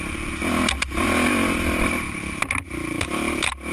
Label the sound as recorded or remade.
recorded